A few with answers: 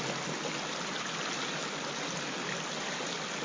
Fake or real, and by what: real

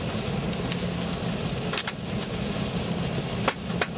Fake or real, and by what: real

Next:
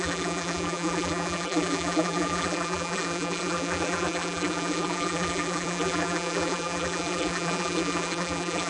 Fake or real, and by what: fake, vocoder, BigVGAN v2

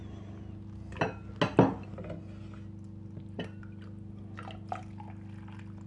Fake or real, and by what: real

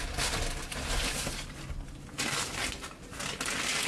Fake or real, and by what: real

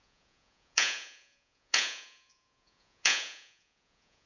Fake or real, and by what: fake, vocoder, Vocos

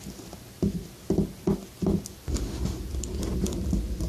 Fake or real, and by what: real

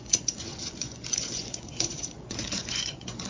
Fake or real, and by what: fake, vocoder, Vocos